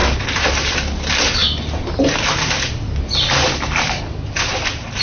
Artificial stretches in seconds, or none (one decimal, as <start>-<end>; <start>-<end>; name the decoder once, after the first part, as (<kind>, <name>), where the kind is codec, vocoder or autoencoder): none